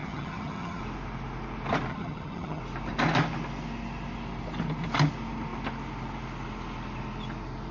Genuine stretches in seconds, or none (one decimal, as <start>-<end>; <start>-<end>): 0.8-1.9; 2.6-7.7